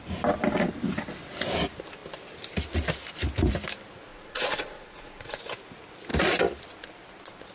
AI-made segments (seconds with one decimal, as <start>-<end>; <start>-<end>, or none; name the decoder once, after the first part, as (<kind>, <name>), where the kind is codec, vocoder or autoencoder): 4.1-5.4 (vocoder, Vocos)